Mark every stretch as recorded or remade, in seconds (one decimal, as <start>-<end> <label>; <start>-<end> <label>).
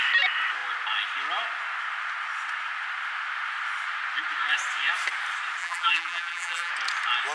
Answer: 0.0-5.6 recorded; 5.6-6.7 remade; 6.7-7.3 recorded